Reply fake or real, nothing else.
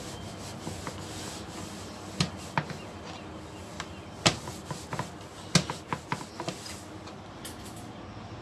real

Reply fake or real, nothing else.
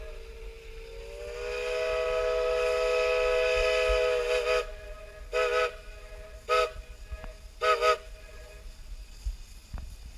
real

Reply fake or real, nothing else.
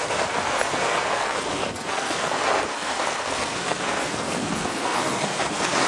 fake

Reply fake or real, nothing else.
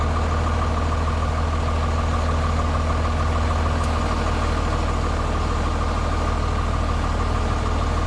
real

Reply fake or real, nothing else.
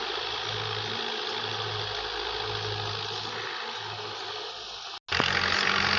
real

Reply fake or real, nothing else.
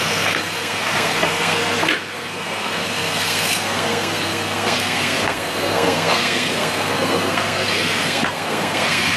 fake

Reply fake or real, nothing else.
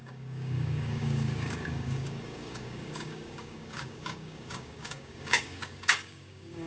fake